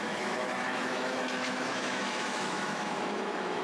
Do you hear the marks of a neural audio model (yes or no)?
yes